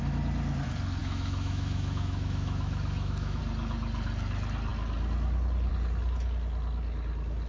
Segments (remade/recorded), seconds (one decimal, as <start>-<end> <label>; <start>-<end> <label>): 0.0-1.0 recorded; 1.0-3.4 remade; 3.4-7.5 recorded